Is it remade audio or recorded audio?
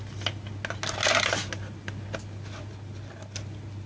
recorded